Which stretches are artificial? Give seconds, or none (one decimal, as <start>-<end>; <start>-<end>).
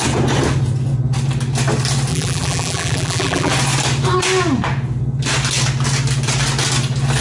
2.1-3.5